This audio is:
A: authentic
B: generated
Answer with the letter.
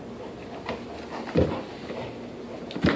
A